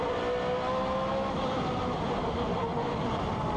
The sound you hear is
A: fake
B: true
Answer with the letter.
B